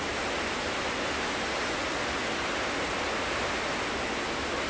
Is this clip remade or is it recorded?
recorded